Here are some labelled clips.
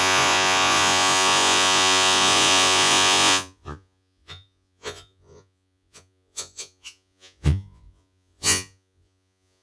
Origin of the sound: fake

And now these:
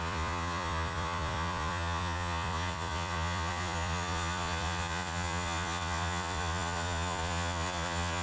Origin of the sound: fake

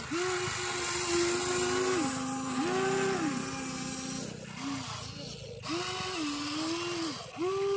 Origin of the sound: real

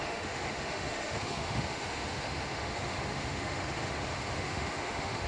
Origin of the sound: fake